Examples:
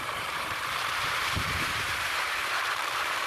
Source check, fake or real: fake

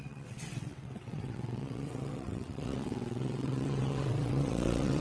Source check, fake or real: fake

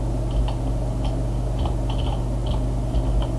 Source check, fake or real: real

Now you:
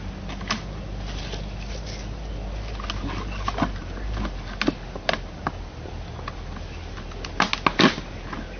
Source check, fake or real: real